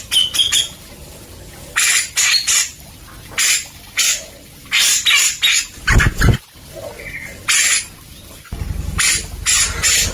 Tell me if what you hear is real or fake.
real